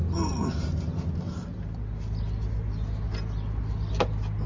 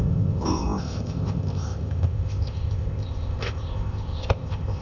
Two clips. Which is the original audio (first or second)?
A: first